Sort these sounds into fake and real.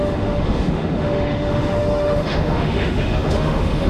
fake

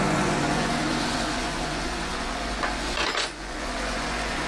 fake